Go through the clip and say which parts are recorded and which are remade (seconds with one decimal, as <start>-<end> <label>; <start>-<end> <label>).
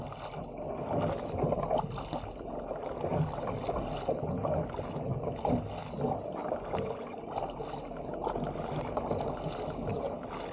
0.0-10.5 recorded